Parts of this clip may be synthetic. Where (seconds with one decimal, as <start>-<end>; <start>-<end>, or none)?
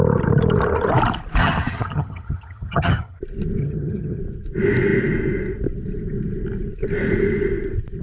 1.4-3.2; 3.6-4.2